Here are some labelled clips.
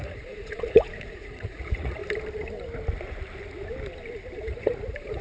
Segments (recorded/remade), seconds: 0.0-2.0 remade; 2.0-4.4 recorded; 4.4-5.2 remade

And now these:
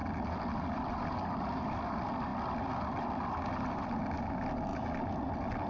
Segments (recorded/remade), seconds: 0.0-4.7 remade; 4.7-5.3 recorded; 5.3-5.7 remade

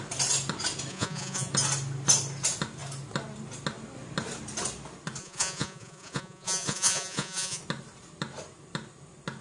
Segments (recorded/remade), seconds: 0.0-0.9 recorded; 0.9-1.5 remade; 1.5-5.2 recorded; 5.2-7.6 remade; 7.6-9.4 recorded

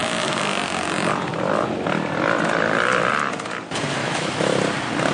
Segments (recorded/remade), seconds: 0.0-4.0 recorded; 4.0-4.6 remade; 4.6-5.1 recorded